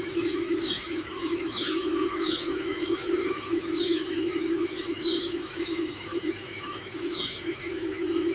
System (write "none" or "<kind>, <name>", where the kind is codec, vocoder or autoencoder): autoencoder, DAC-VAE